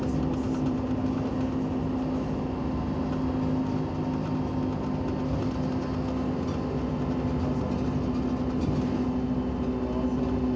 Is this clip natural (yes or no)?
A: yes